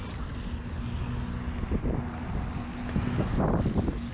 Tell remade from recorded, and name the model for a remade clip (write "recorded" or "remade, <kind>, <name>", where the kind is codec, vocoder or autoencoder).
recorded